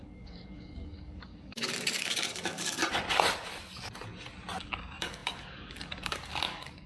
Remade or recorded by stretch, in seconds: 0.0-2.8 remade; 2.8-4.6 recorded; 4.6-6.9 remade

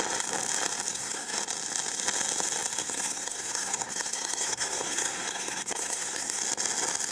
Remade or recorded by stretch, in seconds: 0.0-0.9 recorded; 0.9-1.4 remade; 1.4-2.8 recorded; 2.8-6.4 remade; 6.4-7.1 recorded

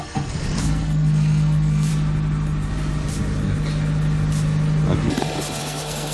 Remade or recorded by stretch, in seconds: 0.0-1.9 remade; 1.9-5.6 recorded; 5.6-6.1 remade